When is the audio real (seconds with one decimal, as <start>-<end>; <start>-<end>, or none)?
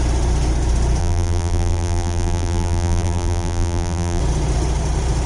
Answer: 0.0-1.0; 4.2-5.3